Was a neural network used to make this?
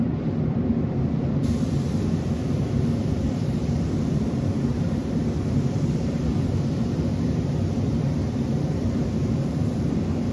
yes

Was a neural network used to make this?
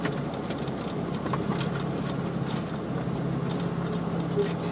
no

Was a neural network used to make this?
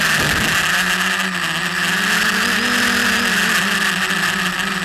no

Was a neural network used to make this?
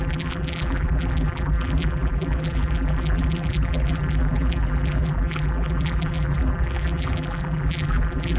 yes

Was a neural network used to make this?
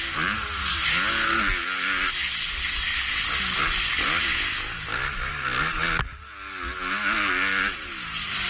no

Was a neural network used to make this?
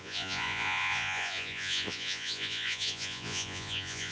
yes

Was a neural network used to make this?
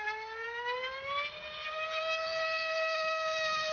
no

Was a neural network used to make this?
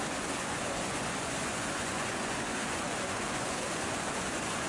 yes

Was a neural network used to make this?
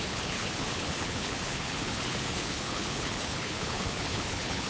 yes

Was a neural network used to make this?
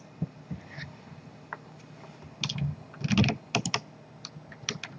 no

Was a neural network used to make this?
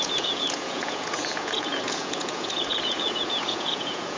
yes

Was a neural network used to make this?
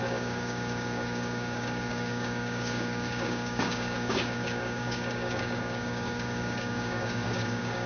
yes